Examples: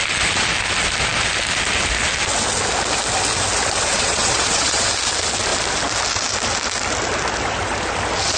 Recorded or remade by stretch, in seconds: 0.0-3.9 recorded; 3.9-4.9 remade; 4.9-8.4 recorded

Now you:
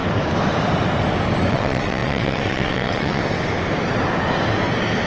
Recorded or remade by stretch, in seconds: 0.0-1.5 recorded; 1.5-3.2 remade; 3.2-5.1 recorded

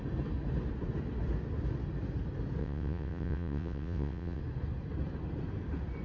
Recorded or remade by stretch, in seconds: 0.0-2.6 recorded; 2.6-4.4 remade; 4.4-6.0 recorded

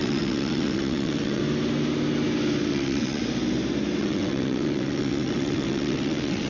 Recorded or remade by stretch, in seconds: 0.0-1.4 remade; 1.4-2.7 recorded; 2.7-3.2 remade; 3.2-4.0 recorded; 4.0-6.5 remade

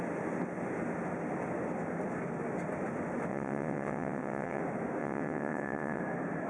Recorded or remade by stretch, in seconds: 0.0-3.3 recorded; 3.3-4.6 remade; 4.6-5.0 recorded; 5.0-6.0 remade; 6.0-6.5 recorded

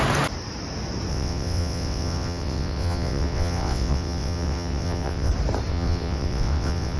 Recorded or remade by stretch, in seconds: 0.0-1.1 recorded; 1.1-5.3 remade; 5.3-5.7 recorded; 5.7-7.0 remade

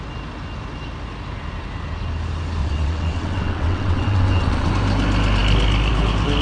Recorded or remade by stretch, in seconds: 0.0-2.6 recorded; 2.6-4.7 remade; 4.7-6.4 recorded

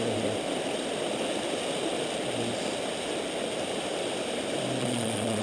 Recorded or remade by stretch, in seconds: 0.0-4.8 recorded; 4.8-5.4 remade